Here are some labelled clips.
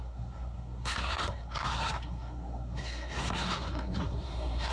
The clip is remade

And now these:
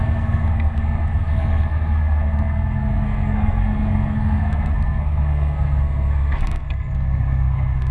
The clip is remade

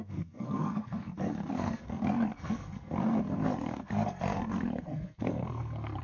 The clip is remade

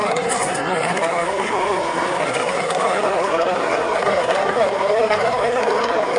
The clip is remade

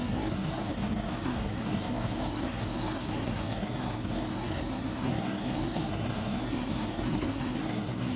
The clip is remade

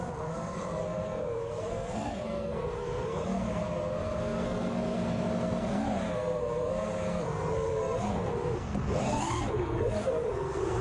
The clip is remade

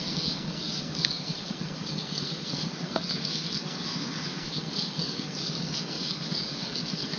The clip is remade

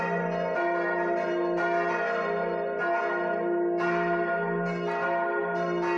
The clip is recorded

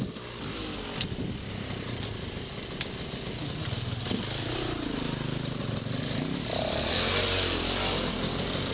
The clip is recorded